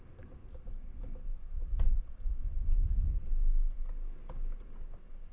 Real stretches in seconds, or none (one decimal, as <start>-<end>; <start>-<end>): 0.0-5.3